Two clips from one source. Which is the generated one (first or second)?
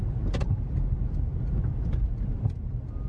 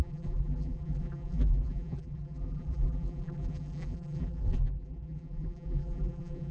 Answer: second